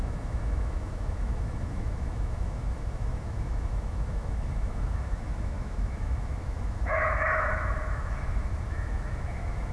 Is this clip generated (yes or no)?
yes